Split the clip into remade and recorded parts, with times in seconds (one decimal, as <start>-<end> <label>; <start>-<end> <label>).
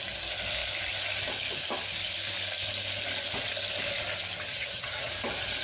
0.0-4.5 recorded; 4.5-5.1 remade; 5.1-5.6 recorded